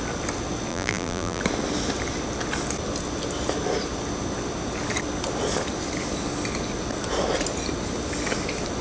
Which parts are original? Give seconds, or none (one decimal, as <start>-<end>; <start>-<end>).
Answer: 0.0-0.7; 1.4-8.8